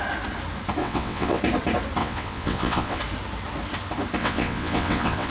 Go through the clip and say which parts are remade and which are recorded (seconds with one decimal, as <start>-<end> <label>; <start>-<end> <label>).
0.0-0.8 recorded; 0.8-1.4 remade; 1.4-2.0 recorded; 2.0-3.0 remade; 3.0-4.2 recorded; 4.2-5.3 remade